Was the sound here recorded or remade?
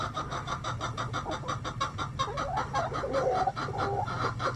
recorded